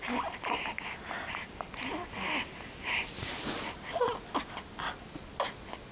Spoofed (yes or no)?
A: no